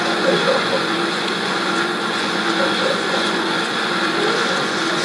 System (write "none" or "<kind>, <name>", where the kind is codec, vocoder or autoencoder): vocoder, Vocos